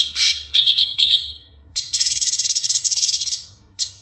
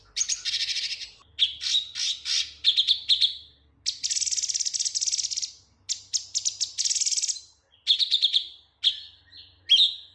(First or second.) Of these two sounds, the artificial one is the first